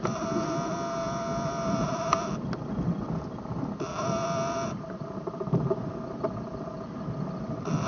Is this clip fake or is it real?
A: real